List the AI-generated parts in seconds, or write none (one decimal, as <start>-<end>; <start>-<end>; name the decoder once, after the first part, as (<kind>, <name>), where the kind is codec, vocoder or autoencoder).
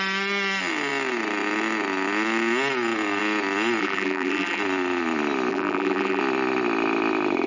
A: 3.8-4.6 (vocoder, BigVGAN v2); 5.5-6.2